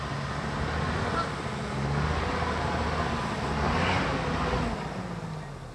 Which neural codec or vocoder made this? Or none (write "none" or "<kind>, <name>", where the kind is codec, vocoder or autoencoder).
none